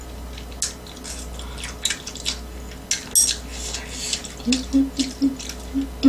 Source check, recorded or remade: recorded